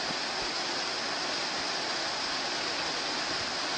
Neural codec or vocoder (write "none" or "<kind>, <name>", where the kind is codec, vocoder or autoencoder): none